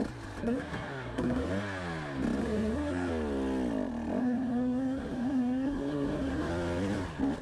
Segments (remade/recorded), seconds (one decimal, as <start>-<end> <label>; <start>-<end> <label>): 0.0-0.4 recorded; 0.4-1.5 remade; 1.5-2.4 recorded; 2.4-3.1 remade; 3.1-4.2 recorded; 4.2-6.5 remade; 6.5-7.4 recorded